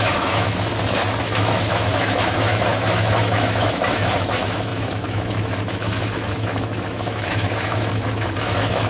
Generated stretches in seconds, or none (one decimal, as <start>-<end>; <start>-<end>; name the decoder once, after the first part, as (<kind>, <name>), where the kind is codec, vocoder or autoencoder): 0.0-0.7 (autoencoder, DAC-VAE); 1.2-8.9